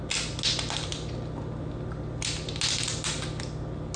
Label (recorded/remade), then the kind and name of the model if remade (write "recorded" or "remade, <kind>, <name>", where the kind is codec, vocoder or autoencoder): recorded